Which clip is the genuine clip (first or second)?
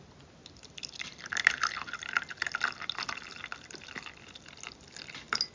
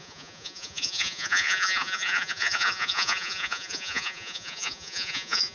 first